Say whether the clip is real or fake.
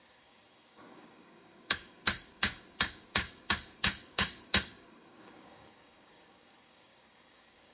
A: fake